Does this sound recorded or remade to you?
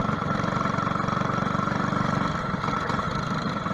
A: recorded